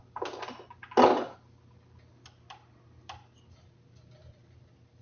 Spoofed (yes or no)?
no